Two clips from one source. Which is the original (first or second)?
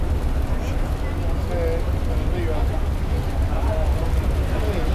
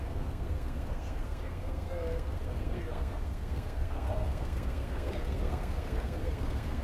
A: first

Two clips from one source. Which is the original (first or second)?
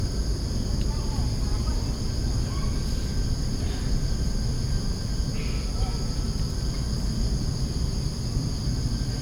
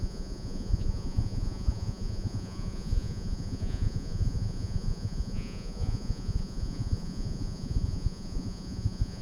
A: first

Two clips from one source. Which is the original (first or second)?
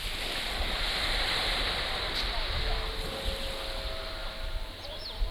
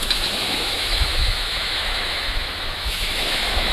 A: first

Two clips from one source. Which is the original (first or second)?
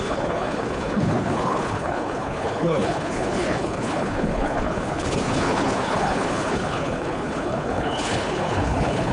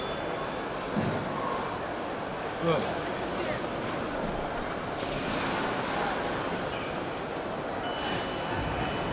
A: second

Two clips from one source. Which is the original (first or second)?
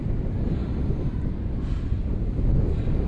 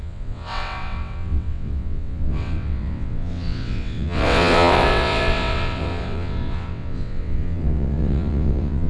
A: first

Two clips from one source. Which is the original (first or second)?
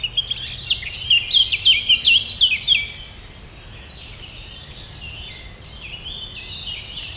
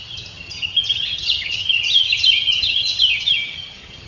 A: first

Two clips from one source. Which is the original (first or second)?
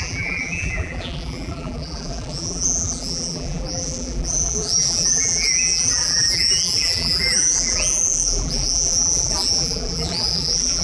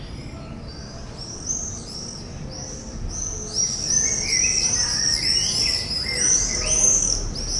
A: second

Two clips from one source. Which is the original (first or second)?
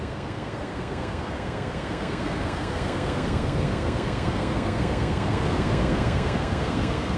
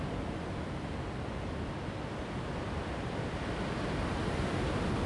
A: second